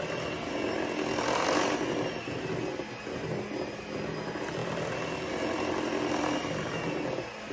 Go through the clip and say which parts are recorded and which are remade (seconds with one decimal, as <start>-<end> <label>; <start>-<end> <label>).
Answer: 0.0-7.5 recorded